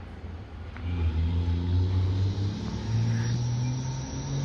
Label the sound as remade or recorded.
recorded